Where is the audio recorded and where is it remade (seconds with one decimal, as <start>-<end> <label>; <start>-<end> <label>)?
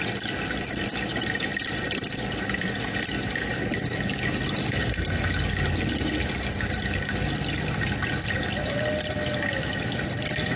0.0-4.6 recorded; 4.6-5.3 remade; 5.3-10.6 recorded